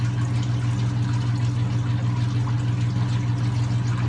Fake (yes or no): no